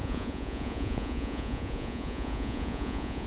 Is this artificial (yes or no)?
yes